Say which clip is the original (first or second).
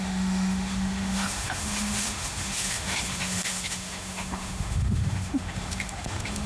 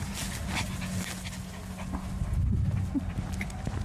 second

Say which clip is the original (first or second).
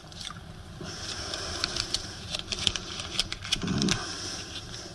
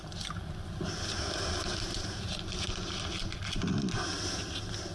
second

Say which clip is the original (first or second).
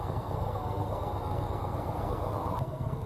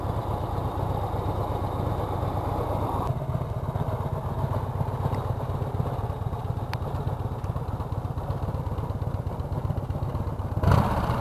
second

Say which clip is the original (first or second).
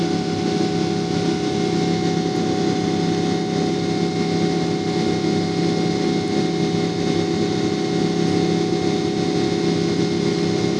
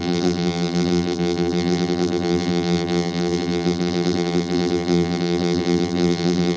first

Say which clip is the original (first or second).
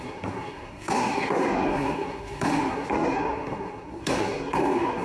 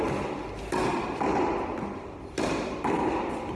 second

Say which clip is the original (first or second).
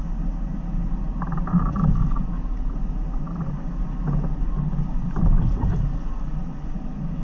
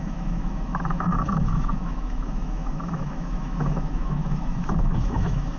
first